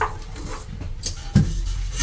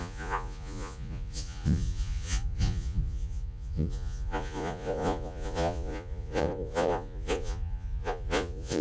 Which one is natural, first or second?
first